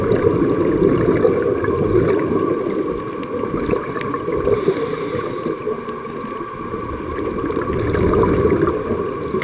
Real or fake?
fake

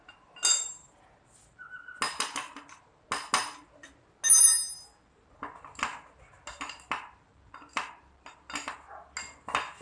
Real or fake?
real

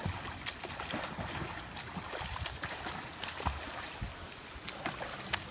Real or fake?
real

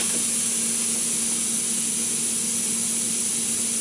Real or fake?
real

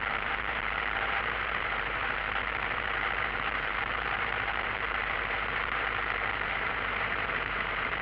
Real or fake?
fake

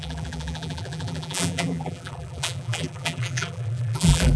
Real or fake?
fake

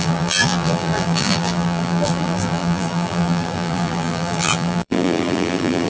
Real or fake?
fake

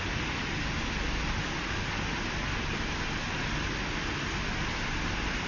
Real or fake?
real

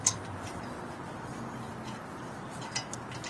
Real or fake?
real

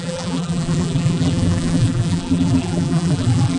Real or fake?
fake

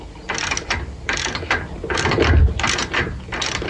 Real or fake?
real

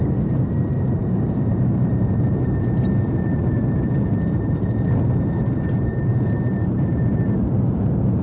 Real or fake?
fake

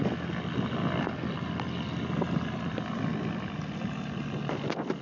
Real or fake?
real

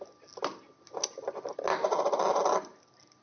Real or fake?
real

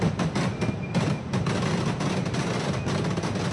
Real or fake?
real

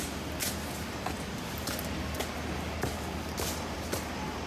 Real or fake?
real